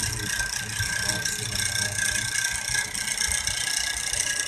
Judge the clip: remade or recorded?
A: recorded